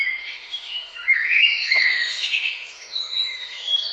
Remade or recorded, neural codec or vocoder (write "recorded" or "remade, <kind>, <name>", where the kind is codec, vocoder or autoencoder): remade, autoencoder, DAC-VAE